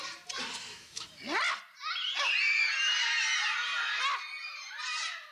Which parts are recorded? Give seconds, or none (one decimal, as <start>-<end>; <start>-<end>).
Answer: 0.0-0.6; 1.1-5.3